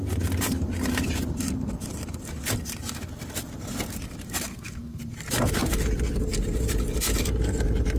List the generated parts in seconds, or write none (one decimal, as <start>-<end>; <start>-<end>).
4.5-5.0